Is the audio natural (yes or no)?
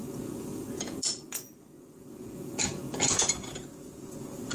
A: no